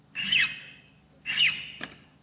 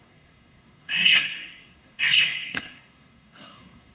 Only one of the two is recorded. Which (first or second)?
first